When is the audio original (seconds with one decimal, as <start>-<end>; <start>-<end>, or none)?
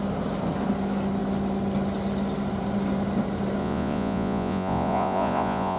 0.0-3.6